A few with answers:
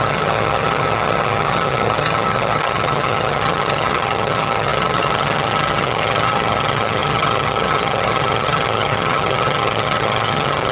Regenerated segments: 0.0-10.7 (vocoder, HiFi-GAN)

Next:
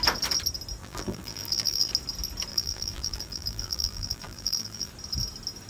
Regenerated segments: 0.8-1.9 (vocoder, BigVGAN v2); 2.5-4.9